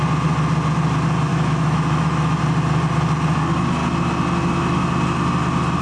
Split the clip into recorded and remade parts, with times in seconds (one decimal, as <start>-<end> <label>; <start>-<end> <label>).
0.0-1.3 recorded; 1.3-2.4 remade; 2.4-5.8 recorded